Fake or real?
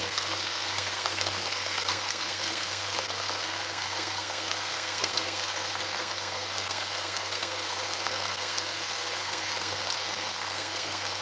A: fake